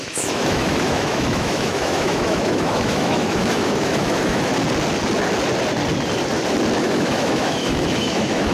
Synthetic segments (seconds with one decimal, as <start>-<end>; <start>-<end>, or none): 0.0-4.5; 6.8-8.5